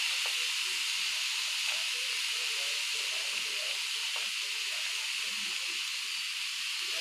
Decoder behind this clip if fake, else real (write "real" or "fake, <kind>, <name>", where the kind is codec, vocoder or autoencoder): real